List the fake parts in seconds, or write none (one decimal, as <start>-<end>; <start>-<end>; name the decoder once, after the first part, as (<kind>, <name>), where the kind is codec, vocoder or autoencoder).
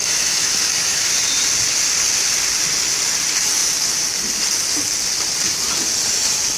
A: 0.0-1.1 (autoencoder, DAC-VAE)